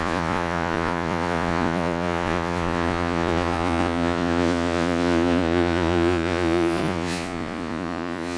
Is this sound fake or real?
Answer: fake